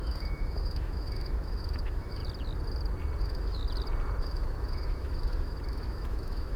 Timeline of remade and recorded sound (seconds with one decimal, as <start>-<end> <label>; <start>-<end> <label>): 0.0-2.2 remade; 2.2-3.2 recorded; 3.2-3.6 remade; 3.6-4.2 recorded; 4.2-6.6 remade